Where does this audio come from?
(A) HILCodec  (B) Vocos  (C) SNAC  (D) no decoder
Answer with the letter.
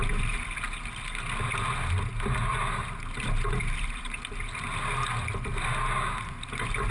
D